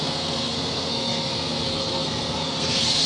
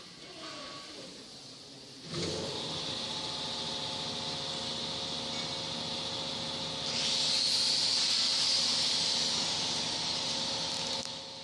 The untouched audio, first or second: second